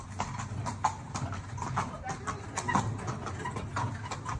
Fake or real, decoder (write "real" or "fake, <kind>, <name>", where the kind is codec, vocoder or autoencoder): real